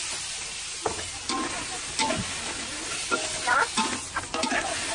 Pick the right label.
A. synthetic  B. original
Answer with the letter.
B